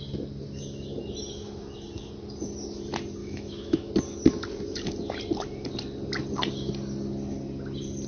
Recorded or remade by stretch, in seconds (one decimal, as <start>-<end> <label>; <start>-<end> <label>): 0.0-3.2 recorded; 3.2-3.9 remade; 3.9-8.1 recorded